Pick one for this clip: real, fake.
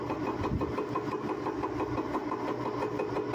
real